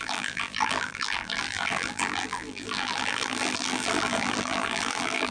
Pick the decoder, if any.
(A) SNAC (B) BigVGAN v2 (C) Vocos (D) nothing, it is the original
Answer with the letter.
B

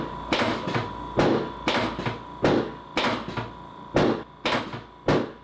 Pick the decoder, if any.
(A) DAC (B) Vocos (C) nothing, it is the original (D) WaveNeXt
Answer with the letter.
C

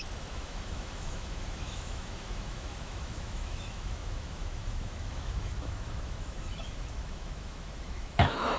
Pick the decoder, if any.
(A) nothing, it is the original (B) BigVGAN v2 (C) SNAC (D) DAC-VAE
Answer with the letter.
D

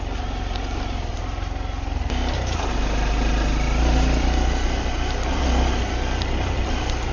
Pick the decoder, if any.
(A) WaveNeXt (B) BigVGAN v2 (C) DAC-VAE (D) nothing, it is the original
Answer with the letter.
D